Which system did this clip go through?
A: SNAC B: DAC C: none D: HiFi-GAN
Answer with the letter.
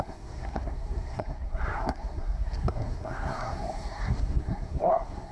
A